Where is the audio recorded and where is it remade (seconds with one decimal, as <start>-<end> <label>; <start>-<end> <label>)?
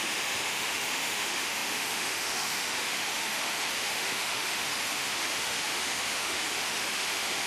0.0-7.5 remade